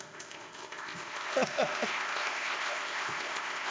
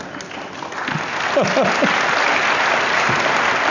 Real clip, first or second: second